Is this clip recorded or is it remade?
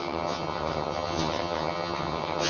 remade